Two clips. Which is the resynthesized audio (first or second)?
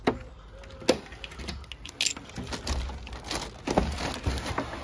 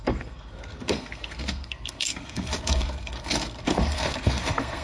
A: second